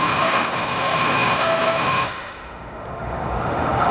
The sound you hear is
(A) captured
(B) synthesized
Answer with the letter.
B